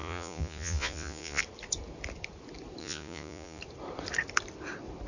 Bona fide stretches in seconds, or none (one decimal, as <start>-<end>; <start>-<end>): 1.4-2.8; 3.6-5.1